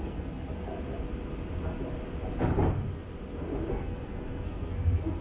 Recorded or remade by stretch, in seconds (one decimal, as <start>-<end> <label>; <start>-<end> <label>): 0.0-0.7 remade; 0.7-3.7 recorded; 3.7-5.2 remade